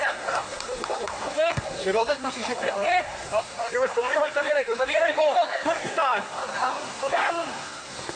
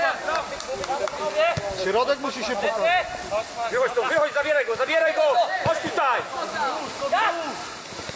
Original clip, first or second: second